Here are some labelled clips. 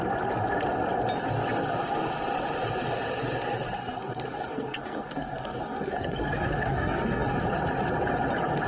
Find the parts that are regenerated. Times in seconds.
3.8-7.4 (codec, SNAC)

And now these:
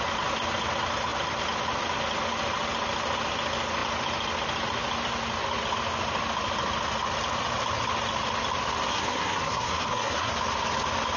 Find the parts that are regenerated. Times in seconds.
8.9-10.3 (codec, SNAC)

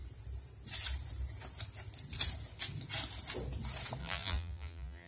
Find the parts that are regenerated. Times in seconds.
4.0-5.1 (vocoder, BigVGAN v2)

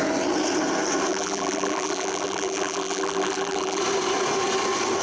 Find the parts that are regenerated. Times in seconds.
1.1-3.8 (vocoder, BigVGAN v2)

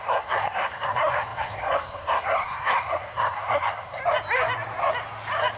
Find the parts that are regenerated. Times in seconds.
0.0-4.0 (codec, SNAC)

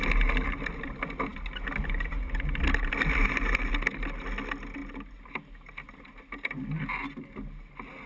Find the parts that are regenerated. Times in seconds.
none

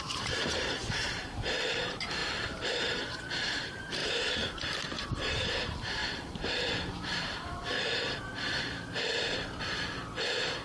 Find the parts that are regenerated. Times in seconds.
0.0-2.2 (vocoder, BigVGAN v2); 2.7-10.6

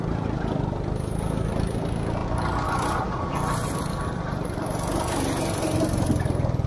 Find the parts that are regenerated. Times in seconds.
none